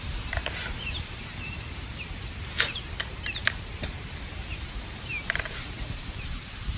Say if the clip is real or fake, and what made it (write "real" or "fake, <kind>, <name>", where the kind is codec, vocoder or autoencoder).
fake, vocoder, BigVGAN v2